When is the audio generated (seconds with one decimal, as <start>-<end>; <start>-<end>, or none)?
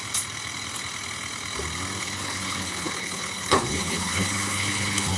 2.0-5.2